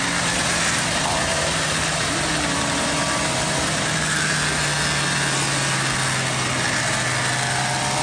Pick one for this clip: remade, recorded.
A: recorded